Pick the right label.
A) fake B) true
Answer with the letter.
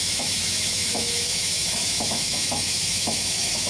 A